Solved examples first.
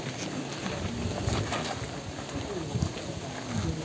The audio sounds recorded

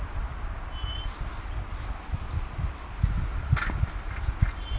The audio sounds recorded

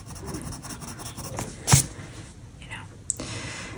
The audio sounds recorded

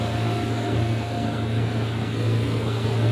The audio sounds remade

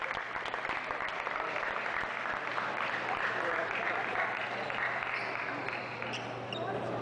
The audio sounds remade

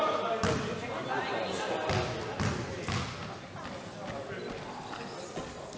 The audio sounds recorded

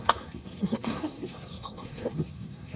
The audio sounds remade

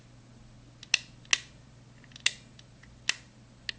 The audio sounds recorded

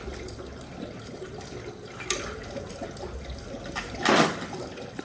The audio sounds recorded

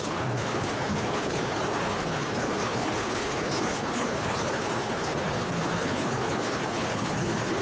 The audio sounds remade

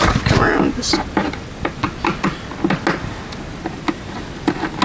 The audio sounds recorded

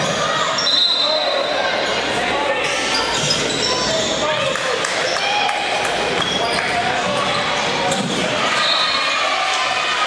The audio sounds recorded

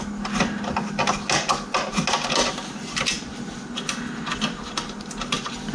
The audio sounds recorded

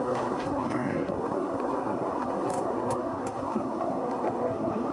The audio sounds remade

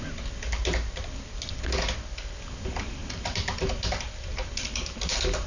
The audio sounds recorded